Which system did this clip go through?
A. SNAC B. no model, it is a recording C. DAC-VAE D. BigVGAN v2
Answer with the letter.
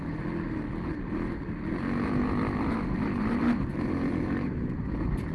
B